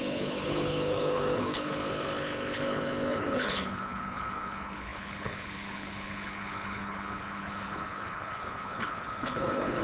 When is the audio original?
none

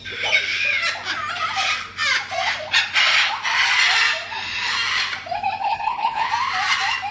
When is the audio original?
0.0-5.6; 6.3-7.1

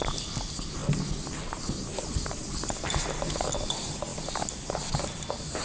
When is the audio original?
0.0-5.6

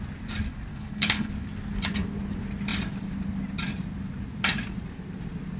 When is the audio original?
0.0-0.7; 1.3-5.6

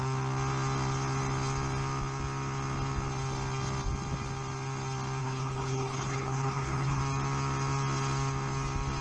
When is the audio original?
0.0-5.2; 7.0-9.0

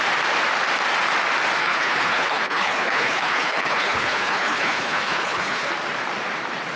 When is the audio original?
0.0-1.6; 5.7-6.8

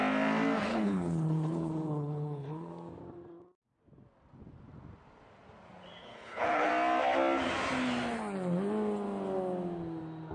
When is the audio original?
0.0-0.7; 2.7-6.0; 6.7-10.3